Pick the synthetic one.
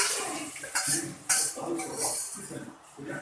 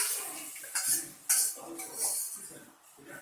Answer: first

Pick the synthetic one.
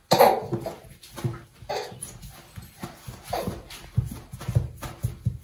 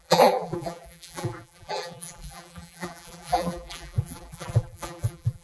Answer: second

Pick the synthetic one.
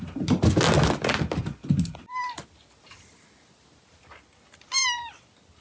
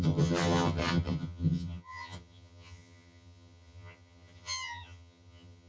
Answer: second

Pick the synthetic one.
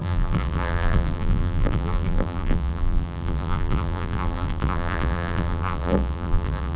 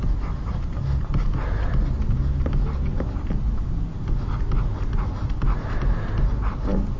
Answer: first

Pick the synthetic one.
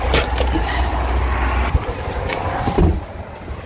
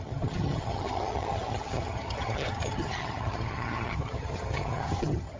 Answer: second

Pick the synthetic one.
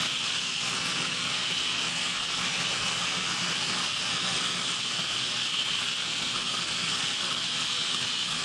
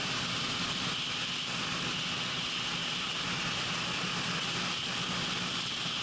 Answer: first